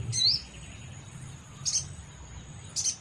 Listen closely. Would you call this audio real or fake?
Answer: real